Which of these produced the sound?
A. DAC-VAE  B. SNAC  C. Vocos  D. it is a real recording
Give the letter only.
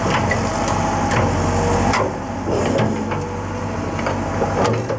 D